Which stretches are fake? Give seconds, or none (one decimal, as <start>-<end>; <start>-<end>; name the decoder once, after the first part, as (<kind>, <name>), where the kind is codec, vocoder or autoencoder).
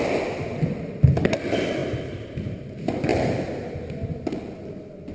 none